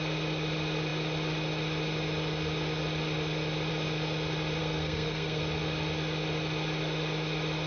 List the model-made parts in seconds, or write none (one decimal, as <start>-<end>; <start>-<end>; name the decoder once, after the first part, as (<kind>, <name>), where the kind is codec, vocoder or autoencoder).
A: 4.6-5.4 (codec, SNAC)